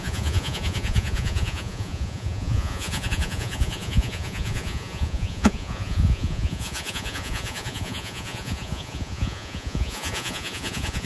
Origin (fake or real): fake